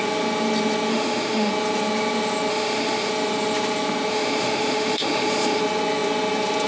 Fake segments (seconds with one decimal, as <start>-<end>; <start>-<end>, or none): 0.9-1.5; 2.5-3.1; 4.1-5.6